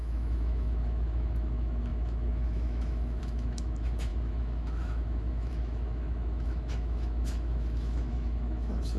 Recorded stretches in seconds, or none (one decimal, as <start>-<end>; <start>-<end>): none

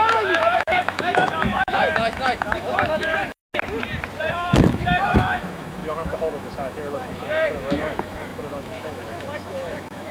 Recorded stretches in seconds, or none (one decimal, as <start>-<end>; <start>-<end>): 3.4-4.3